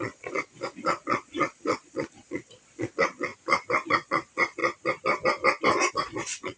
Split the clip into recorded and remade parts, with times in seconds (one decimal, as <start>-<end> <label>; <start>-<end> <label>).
0.0-3.3 remade; 3.3-3.9 recorded; 3.9-4.6 remade; 4.6-5.9 recorded; 5.9-6.6 remade